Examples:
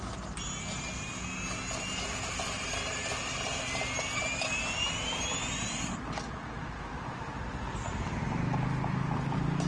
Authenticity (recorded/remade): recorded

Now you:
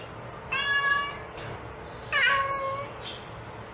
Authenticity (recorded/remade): recorded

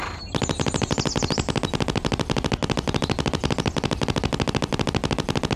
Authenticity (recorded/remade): recorded